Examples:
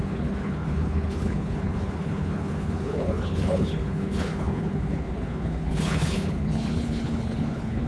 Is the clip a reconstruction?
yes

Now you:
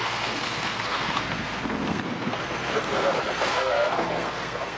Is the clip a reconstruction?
yes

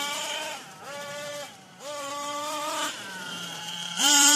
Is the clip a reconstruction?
yes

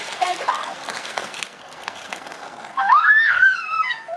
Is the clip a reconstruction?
yes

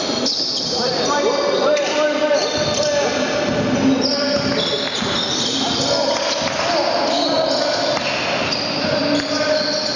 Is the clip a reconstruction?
no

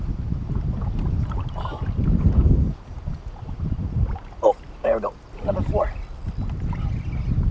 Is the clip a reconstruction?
no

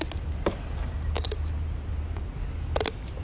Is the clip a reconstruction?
no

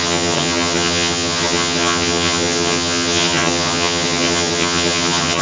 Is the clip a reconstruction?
yes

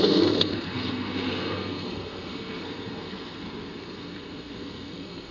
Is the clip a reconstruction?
yes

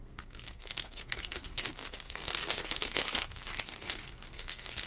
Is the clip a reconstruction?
yes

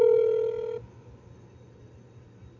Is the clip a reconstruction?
yes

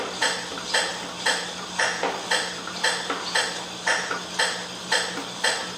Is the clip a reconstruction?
no